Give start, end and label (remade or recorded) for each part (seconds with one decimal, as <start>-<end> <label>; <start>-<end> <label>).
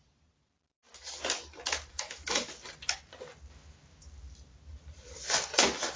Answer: 0.0-1.9 recorded; 1.9-2.5 remade; 2.5-6.0 recorded